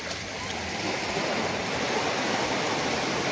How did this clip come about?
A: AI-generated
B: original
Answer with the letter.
B